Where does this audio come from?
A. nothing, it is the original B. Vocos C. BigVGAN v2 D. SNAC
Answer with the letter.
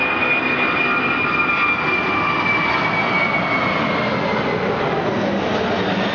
A